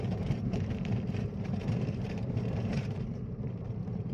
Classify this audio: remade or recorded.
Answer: remade